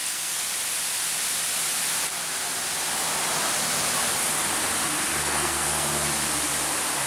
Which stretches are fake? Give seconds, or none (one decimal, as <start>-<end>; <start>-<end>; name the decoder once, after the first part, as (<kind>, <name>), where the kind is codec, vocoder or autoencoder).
0.0-0.5 (codec, SNAC); 5.2-5.9